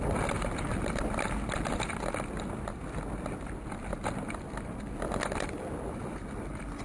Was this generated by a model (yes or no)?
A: no